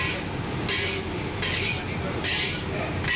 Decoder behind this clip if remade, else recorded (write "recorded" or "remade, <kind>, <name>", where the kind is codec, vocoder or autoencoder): recorded